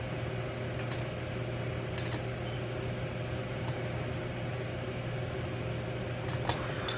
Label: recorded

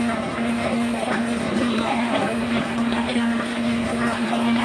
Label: remade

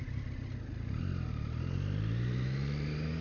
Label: recorded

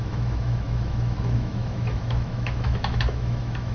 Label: remade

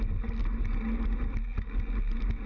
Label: recorded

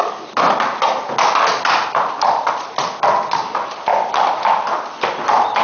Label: recorded